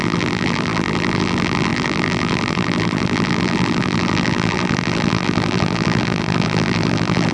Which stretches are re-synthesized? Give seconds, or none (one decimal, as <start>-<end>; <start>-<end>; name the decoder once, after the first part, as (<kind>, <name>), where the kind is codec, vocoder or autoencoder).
0.0-7.3 (vocoder, BigVGAN v2)